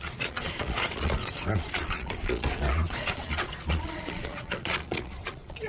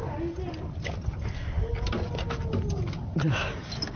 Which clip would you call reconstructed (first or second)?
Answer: first